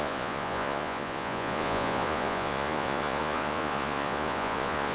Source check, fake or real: fake